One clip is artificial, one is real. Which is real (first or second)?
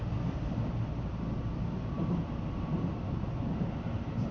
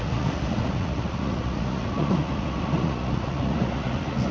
first